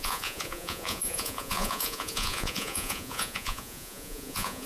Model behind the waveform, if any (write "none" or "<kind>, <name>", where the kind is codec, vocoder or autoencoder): vocoder, Vocos